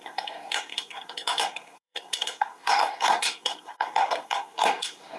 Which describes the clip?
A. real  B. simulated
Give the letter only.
B